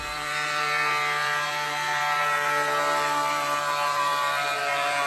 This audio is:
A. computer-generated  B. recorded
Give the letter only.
A